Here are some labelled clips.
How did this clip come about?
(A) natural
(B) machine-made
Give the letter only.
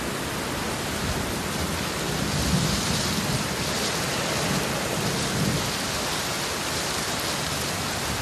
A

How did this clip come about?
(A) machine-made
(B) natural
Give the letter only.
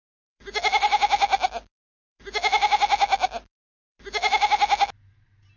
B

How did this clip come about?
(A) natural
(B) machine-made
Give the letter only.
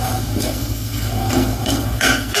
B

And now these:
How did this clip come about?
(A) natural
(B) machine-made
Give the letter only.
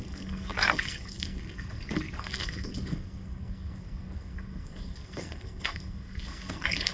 B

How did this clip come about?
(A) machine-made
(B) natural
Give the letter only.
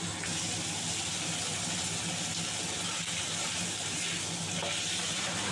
B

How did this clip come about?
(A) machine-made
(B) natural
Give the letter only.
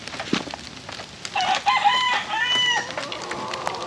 B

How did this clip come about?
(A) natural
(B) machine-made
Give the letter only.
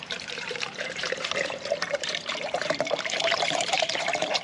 B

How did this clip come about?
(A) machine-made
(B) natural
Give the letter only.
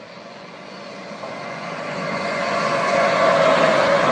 A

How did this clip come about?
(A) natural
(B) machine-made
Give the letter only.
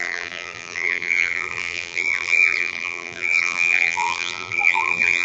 B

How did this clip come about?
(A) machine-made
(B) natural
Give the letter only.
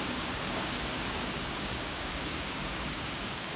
A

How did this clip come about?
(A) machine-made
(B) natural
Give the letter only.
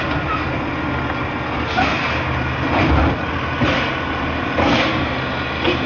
B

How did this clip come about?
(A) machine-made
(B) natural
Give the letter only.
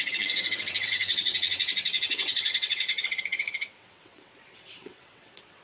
A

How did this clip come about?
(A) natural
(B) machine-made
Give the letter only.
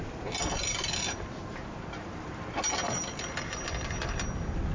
A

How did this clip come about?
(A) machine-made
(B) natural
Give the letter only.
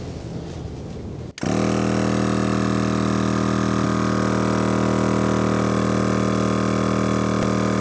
B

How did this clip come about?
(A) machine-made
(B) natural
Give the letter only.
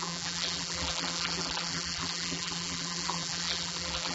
A